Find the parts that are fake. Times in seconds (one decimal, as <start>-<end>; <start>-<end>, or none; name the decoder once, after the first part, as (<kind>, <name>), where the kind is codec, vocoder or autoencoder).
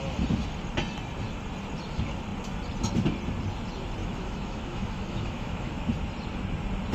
4.0-5.9 (autoencoder, DAC-VAE)